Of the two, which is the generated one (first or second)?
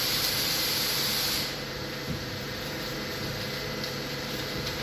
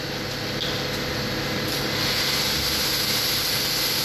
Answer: first